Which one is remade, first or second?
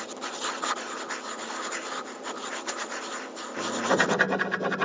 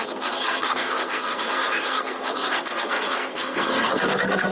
second